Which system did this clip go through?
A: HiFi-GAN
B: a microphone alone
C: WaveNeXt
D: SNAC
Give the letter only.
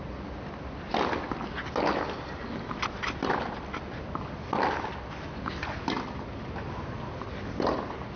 B